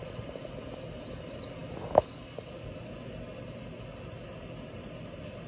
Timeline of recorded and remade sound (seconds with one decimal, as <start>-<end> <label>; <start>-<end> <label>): 0.0-5.5 recorded